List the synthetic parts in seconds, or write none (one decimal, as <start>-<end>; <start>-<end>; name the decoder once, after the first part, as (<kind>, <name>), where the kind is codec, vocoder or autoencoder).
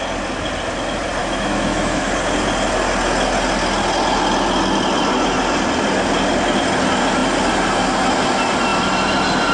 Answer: 1.2-2.0 (autoencoder, DAC-VAE)